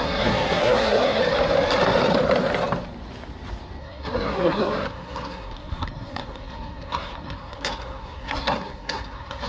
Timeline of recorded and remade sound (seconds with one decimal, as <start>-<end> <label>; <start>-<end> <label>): 0.0-1.2 remade; 1.2-3.8 recorded; 3.8-9.5 remade